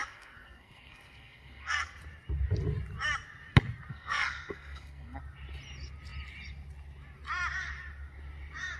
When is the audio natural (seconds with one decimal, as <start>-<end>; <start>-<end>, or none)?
2.0-3.9; 5.2-8.8